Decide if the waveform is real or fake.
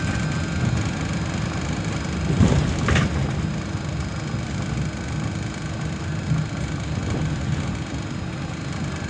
real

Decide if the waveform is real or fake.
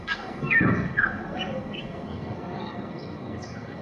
fake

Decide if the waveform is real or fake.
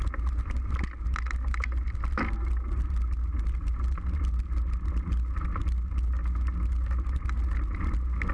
real